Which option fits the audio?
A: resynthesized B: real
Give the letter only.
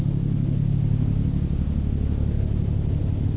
B